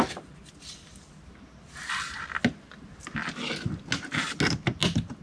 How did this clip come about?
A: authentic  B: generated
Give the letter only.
A